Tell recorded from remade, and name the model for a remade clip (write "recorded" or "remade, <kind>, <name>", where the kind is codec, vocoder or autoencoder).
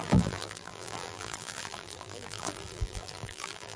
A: remade, vocoder, BigVGAN v2